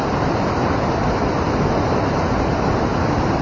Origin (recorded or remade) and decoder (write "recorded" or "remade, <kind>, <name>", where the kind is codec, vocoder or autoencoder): recorded